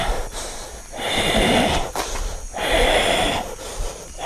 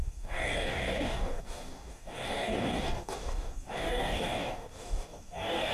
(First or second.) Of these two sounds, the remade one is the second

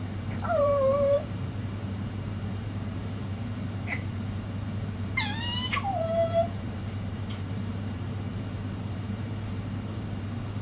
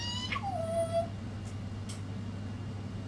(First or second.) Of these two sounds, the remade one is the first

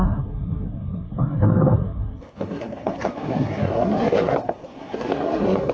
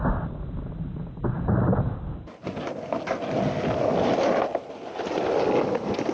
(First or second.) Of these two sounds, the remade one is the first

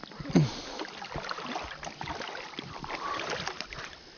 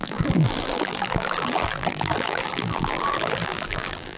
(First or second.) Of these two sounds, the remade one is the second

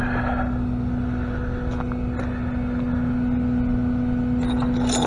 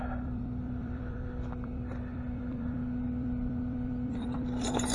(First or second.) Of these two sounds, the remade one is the second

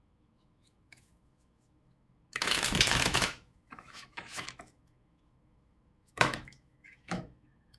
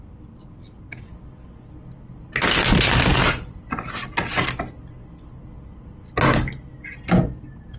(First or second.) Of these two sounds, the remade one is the first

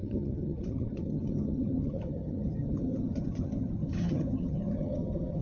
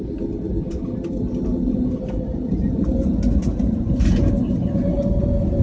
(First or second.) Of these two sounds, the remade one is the first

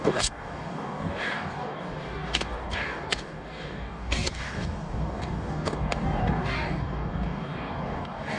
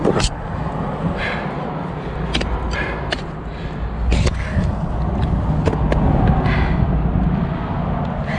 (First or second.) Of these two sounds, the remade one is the first